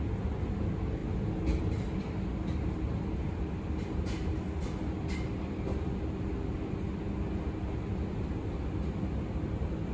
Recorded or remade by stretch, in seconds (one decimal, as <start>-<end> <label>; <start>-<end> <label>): 0.0-9.9 recorded